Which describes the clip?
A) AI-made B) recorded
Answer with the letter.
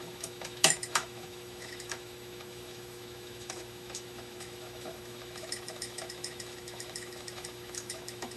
A